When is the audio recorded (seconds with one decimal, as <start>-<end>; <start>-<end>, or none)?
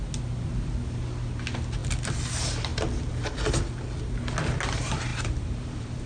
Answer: 0.0-1.8; 2.3-2.7; 3.5-5.1